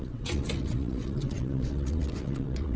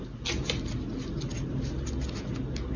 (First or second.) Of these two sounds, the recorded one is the second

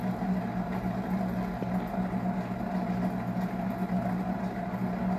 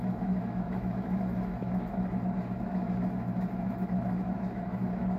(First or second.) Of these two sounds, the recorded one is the first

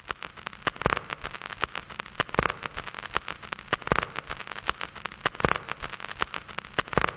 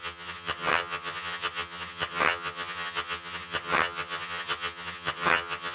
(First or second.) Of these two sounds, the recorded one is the first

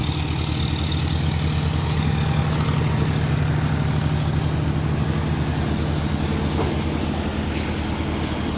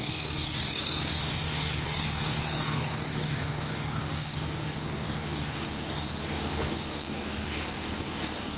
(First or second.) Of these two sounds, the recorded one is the first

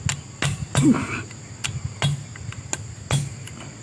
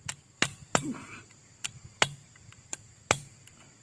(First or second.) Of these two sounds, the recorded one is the first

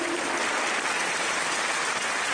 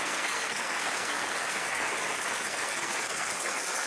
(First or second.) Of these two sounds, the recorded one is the first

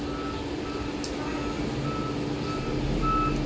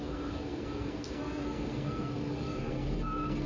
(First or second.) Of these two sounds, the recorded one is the first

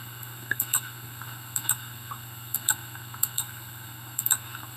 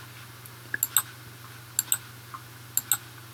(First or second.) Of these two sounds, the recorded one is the second